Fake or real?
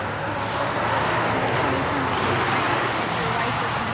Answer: real